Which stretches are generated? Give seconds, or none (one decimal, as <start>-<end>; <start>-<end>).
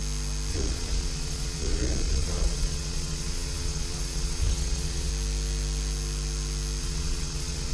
0.5-5.1; 6.8-7.7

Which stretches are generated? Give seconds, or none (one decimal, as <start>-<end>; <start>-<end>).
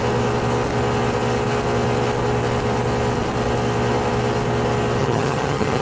5.0-5.8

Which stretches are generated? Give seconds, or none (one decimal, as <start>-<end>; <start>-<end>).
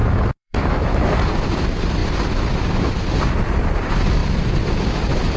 0.0-1.2